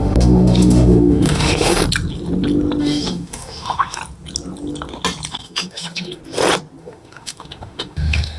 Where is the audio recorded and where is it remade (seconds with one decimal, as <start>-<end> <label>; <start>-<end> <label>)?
0.0-1.8 remade; 1.8-2.8 recorded; 2.8-4.0 remade; 4.0-5.3 recorded; 5.3-6.2 remade; 6.2-6.8 recorded; 6.8-8.4 remade